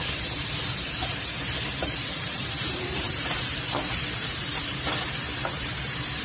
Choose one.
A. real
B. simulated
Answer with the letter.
B